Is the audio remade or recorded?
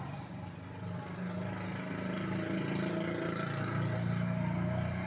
recorded